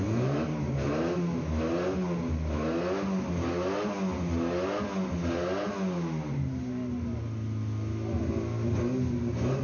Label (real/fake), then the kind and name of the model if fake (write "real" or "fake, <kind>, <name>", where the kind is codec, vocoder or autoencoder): real